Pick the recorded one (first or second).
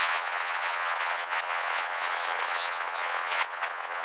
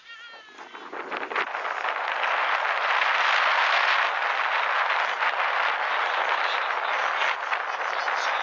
second